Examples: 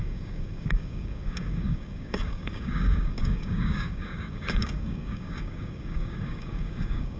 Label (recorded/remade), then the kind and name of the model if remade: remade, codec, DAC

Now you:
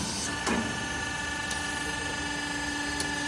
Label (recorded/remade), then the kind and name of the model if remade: recorded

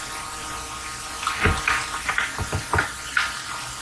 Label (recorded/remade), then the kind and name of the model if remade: recorded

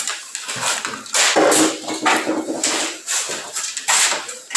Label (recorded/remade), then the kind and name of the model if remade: recorded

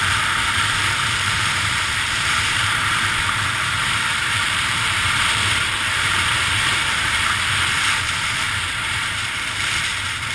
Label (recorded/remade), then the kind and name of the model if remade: remade, vocoder, BigVGAN v2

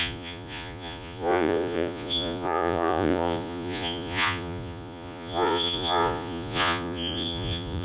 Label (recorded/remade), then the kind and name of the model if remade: remade, vocoder, Vocos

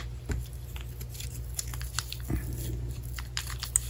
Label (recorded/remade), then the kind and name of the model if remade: recorded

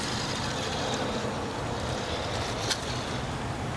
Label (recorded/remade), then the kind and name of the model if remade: recorded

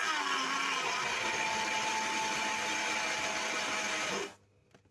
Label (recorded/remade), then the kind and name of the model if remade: recorded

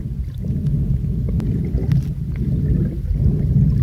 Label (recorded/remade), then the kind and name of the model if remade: recorded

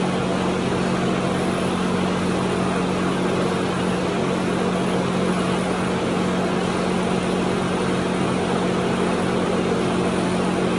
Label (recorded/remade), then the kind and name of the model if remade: recorded